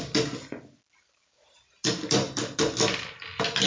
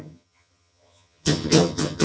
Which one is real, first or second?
first